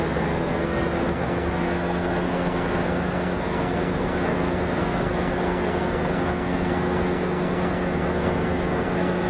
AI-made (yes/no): yes